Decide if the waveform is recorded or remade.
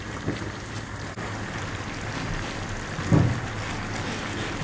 recorded